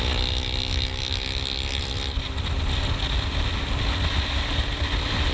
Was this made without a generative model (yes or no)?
yes